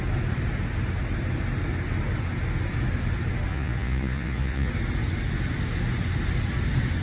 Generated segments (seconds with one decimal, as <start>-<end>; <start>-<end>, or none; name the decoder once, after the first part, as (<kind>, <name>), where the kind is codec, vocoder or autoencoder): 3.5-4.7 (vocoder, Vocos)